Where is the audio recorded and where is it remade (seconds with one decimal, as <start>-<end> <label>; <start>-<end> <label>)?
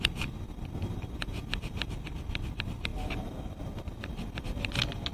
0.0-5.1 recorded